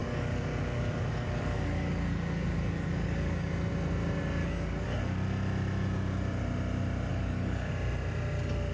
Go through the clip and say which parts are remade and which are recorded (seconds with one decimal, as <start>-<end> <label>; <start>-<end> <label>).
0.0-3.5 remade; 3.5-4.4 recorded; 4.4-5.0 remade; 5.0-7.1 recorded; 7.1-7.7 remade; 7.7-8.7 recorded